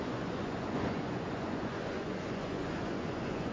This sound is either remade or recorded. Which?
remade